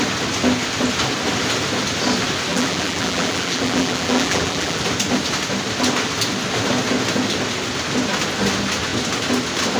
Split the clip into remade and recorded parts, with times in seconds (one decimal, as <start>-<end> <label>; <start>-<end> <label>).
0.0-2.5 recorded; 2.5-4.8 remade; 4.8-9.8 recorded